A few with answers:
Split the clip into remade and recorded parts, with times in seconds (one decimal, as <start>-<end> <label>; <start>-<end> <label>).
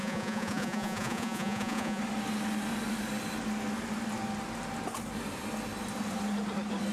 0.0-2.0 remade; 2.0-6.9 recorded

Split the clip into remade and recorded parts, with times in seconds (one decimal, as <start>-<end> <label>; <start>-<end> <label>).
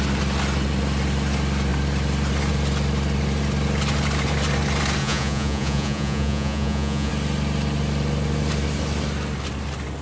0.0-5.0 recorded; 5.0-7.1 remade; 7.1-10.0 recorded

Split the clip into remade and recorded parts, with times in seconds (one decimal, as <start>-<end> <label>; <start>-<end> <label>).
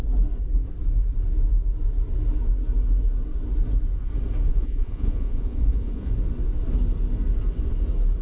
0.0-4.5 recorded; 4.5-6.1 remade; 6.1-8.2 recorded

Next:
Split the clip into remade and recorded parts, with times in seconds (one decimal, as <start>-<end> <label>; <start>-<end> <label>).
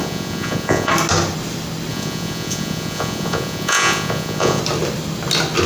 0.0-0.9 remade; 0.9-1.9 recorded; 1.9-4.6 remade; 4.6-5.7 recorded